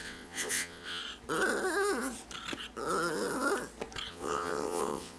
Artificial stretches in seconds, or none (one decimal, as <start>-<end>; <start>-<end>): 0.0-1.0; 4.1-5.2